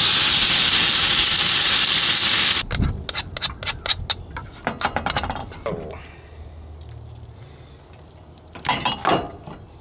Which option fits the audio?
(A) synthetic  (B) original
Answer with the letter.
B